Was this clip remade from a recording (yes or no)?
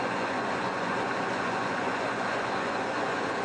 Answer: yes